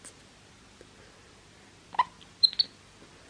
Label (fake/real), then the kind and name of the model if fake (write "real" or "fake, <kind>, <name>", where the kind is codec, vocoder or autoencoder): real